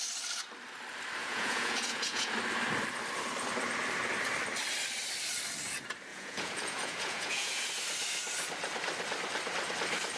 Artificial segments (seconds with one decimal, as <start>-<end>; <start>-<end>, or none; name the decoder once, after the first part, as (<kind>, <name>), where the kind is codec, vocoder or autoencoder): 1.2-2.3 (vocoder, Vocos); 6.1-7.7